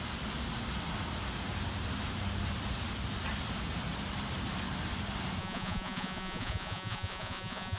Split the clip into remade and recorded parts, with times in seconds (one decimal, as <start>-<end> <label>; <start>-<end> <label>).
0.0-5.4 recorded; 5.4-7.8 remade